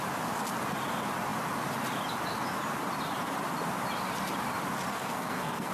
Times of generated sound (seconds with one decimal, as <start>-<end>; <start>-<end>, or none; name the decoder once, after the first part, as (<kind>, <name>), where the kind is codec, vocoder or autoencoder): 4.9-5.7 (codec, SNAC)